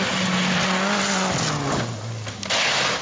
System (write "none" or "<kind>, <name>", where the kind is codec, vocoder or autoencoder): none